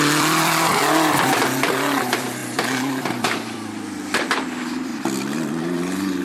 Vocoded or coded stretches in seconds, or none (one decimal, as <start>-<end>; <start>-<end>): 0.0-4.9; 5.6-6.2